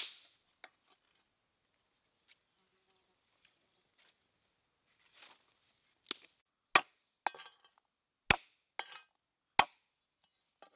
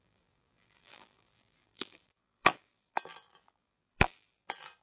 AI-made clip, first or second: second